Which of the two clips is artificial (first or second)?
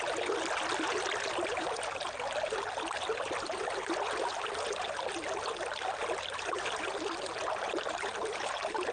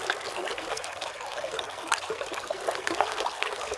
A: second